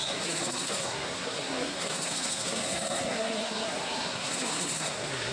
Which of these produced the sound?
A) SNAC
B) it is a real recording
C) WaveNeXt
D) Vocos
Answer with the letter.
A